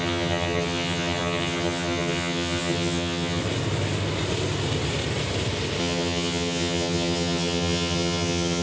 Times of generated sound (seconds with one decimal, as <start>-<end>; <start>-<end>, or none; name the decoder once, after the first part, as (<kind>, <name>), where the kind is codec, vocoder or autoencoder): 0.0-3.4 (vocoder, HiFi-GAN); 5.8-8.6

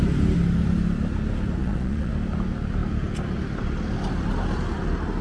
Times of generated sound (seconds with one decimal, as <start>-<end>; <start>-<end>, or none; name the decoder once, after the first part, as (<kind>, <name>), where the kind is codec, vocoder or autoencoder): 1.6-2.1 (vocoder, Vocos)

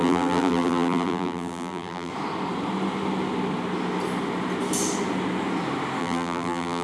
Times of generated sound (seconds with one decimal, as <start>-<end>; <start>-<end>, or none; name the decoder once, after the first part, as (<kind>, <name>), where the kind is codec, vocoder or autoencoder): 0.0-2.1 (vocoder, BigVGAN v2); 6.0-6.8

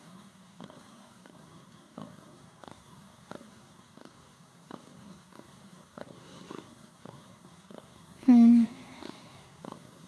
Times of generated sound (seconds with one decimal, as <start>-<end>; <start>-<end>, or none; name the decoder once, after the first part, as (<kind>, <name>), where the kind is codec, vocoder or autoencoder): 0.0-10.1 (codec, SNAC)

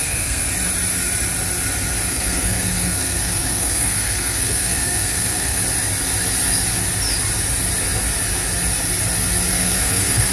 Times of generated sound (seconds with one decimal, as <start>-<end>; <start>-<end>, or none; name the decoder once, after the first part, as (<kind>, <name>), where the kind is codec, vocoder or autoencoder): 0.0-0.4 (codec, SNAC); 2.1-5.6; 9.5-10.3

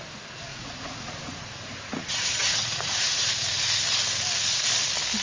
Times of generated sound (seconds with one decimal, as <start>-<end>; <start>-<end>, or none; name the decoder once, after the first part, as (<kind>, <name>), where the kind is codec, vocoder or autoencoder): 0.5-3.6 (vocoder, Vocos)